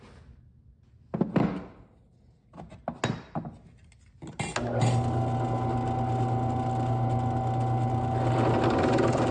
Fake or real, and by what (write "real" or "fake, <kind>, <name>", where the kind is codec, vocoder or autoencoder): real